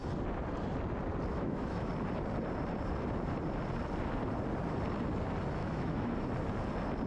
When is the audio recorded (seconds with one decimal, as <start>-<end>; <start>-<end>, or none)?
0.0-1.3; 1.9-5.6; 6.3-7.1